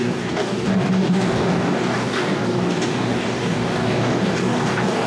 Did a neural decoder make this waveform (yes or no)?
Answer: yes